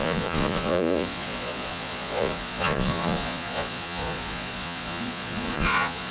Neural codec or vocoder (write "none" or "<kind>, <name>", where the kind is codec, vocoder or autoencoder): vocoder, Vocos